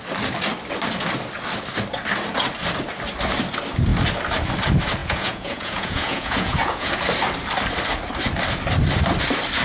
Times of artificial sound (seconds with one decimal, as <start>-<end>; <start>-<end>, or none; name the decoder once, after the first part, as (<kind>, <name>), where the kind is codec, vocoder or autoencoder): 5.0-6.9 (vocoder, Vocos)

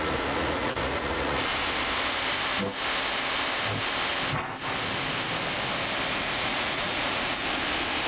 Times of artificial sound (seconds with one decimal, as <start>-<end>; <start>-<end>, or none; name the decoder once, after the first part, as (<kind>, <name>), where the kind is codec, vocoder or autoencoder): 0.0-1.5 (vocoder, Vocos); 6.1-7.4

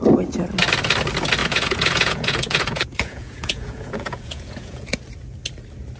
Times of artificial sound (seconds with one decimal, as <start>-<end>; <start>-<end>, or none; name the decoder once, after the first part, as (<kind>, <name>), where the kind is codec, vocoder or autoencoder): 1.4-5.0 (vocoder, Vocos)

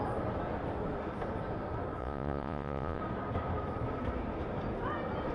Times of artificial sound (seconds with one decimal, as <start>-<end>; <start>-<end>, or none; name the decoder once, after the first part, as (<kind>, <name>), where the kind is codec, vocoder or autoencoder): 2.0-3.0 (vocoder, Vocos)

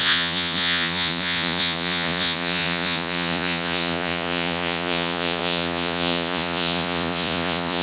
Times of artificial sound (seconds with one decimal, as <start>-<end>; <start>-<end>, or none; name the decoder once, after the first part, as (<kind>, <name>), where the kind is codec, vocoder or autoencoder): 0.0-7.8 (vocoder, Vocos)

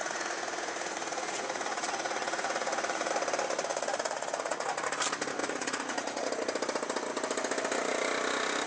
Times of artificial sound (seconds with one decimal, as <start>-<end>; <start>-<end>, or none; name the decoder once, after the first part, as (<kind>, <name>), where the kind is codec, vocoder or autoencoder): 0.0-3.1 (vocoder, Vocos); 3.7-5.0; 5.4-6.3